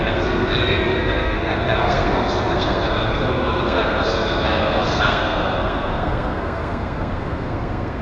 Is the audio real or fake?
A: fake